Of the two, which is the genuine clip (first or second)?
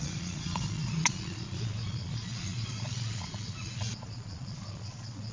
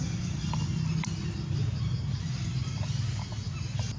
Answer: second